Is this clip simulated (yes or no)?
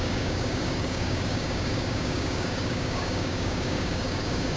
yes